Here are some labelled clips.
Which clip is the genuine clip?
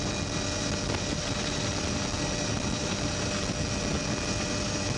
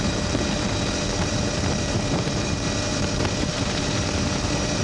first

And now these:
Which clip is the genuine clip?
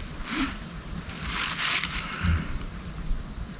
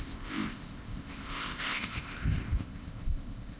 first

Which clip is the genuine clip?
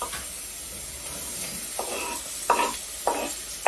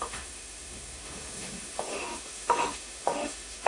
first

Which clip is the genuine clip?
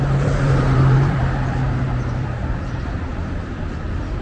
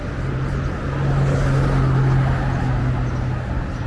second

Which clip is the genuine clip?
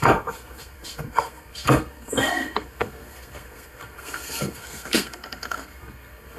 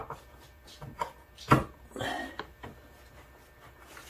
second